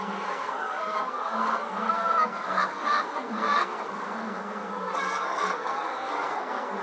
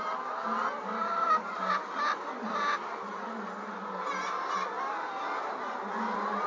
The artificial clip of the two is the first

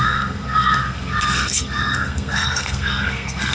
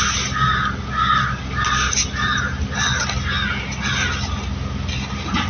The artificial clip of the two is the first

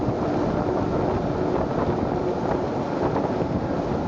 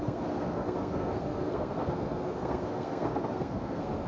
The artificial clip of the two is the second